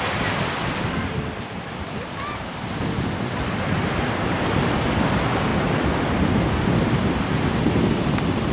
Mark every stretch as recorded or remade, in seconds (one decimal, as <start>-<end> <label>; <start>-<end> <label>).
0.0-0.6 recorded; 0.6-4.3 remade; 4.3-8.5 recorded